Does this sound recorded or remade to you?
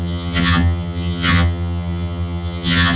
remade